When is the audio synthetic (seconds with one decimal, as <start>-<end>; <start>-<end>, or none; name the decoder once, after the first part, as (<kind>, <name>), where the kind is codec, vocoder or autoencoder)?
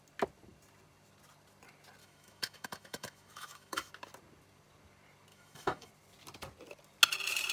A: 2.0-3.9 (autoencoder, DAC-VAE); 5.3-5.9